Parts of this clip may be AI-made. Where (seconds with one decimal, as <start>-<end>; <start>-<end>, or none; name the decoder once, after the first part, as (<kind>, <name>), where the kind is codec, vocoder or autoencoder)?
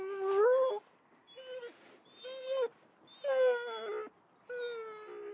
none